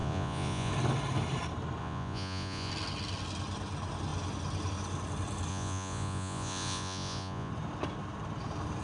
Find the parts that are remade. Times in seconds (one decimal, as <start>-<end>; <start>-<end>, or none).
0.0-0.7; 1.8-2.7; 5.5-7.5